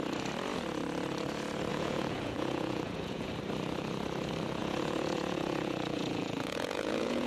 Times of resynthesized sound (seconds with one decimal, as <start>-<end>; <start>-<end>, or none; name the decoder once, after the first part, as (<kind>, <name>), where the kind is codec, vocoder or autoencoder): 1.7-3.3 (vocoder, Vocos); 4.6-7.3